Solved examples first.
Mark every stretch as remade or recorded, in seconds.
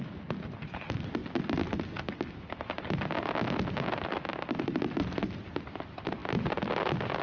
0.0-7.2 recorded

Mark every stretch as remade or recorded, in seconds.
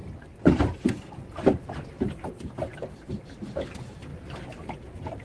0.0-3.1 remade; 3.1-4.1 recorded; 4.1-4.7 remade; 4.7-5.2 recorded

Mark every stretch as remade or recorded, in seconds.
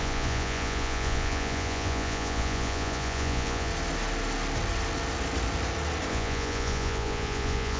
0.0-3.7 remade; 3.7-6.1 recorded; 6.1-7.8 remade